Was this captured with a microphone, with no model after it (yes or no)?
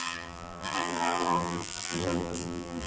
no